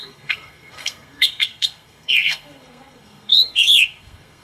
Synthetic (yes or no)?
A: yes